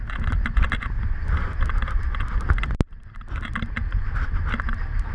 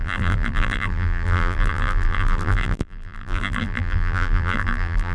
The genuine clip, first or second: first